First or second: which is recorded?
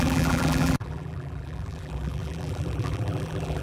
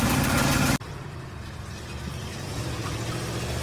second